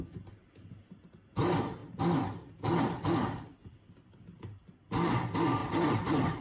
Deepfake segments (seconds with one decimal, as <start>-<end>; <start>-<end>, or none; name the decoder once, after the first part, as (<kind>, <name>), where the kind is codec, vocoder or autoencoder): 1.8-3.9 (vocoder, BigVGAN v2); 5.6-6.4